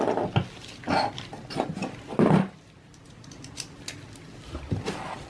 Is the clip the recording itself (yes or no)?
yes